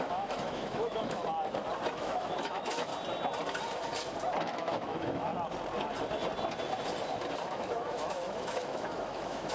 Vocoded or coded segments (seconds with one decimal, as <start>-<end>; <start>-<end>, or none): 0.0-1.2; 1.9-2.9; 4.4-5.3; 7.5-9.5